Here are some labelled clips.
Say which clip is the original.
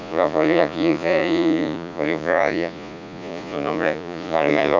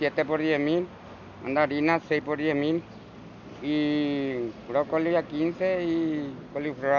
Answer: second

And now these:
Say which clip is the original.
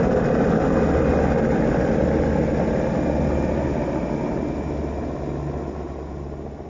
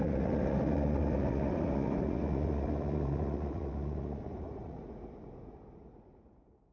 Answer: first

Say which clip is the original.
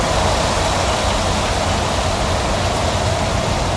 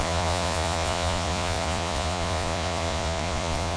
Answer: first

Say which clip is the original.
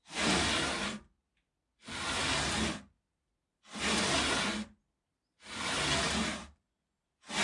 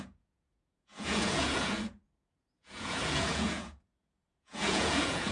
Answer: first